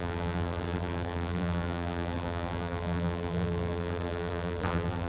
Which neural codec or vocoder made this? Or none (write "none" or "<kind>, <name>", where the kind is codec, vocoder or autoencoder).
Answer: vocoder, BigVGAN v2